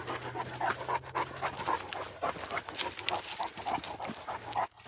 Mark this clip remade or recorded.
recorded